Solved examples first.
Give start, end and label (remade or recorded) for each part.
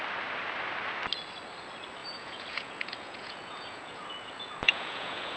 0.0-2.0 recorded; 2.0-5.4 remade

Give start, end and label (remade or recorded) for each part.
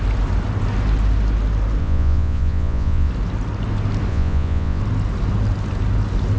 0.0-1.8 recorded; 1.8-3.1 remade; 3.1-4.1 recorded; 4.1-4.8 remade; 4.8-6.4 recorded